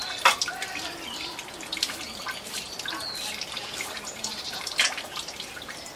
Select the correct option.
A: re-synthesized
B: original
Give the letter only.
A